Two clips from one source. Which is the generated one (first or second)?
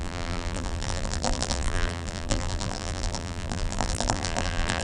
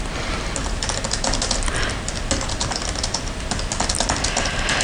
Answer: first